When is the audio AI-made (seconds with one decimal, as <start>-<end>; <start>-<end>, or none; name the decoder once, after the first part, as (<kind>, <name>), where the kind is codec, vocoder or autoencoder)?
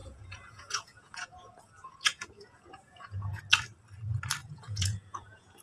0.0-3.4 (vocoder, Vocos); 4.4-5.6